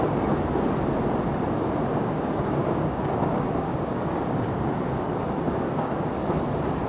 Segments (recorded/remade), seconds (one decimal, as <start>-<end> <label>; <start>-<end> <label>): 0.0-2.0 recorded; 2.0-6.1 remade; 6.1-6.9 recorded